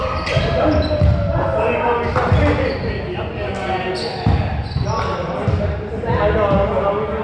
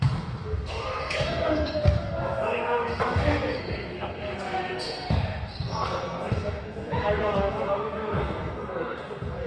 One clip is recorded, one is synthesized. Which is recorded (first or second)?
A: first